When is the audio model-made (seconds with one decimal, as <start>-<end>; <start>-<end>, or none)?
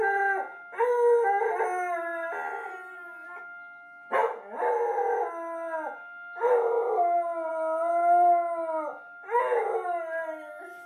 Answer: none